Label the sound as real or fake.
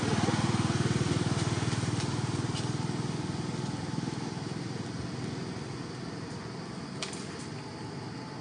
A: real